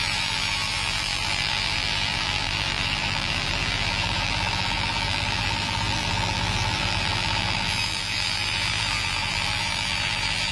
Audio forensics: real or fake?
fake